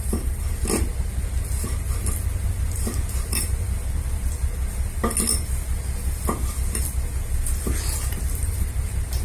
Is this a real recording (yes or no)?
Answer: yes